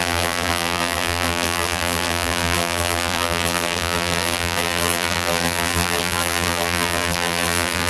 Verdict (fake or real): fake